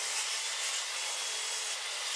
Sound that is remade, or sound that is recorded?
recorded